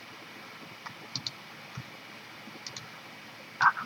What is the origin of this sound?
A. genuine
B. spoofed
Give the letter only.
A